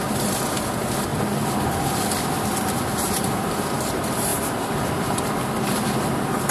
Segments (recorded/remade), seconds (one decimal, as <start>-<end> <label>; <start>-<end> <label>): 0.0-1.1 remade; 1.1-2.7 recorded; 2.7-4.3 remade; 4.3-5.6 recorded; 5.6-6.5 remade

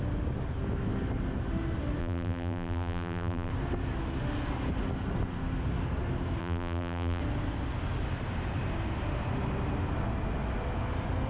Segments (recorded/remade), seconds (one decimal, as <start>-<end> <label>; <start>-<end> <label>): 0.0-2.0 recorded; 2.0-3.5 remade; 3.5-6.4 recorded; 6.4-7.2 remade; 7.2-11.3 recorded

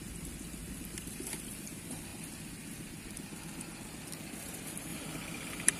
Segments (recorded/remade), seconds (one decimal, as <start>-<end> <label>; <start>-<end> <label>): 0.0-0.6 recorded; 0.6-1.7 remade; 1.7-4.9 recorded; 4.9-5.8 remade

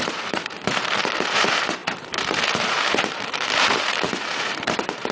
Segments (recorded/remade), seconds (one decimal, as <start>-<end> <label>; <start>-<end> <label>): 0.0-5.1 remade

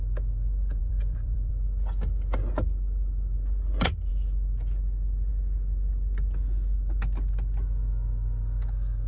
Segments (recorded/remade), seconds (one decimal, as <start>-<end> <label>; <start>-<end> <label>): 0.0-0.8 recorded; 0.8-1.5 remade; 1.5-9.1 recorded

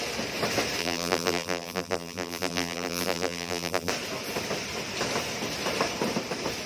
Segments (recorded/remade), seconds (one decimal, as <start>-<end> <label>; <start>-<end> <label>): 0.0-0.8 recorded; 0.8-3.9 remade; 3.9-6.7 recorded